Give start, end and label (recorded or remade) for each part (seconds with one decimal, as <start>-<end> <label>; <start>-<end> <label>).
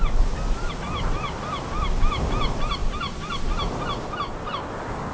0.0-5.1 recorded